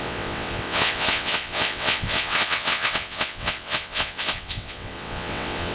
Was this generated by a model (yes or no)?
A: yes